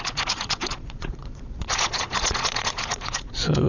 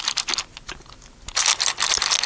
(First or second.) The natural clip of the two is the second